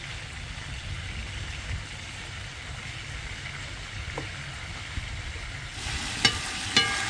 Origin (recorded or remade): recorded